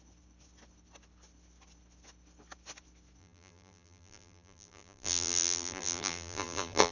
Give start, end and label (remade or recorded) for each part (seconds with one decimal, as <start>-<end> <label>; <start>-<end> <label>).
0.0-3.2 recorded; 3.2-6.9 remade